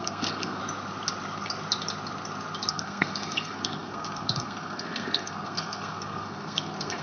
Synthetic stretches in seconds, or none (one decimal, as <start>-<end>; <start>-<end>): 0.0-0.6; 2.7-7.0